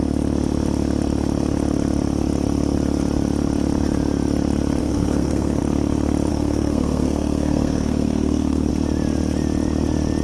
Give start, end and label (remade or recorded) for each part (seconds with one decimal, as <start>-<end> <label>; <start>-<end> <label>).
0.0-4.8 recorded; 4.8-5.6 remade; 5.6-6.3 recorded; 6.3-8.7 remade; 8.7-10.2 recorded